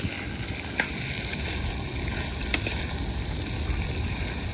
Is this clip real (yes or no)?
yes